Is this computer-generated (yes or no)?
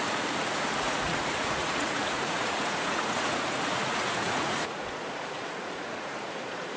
yes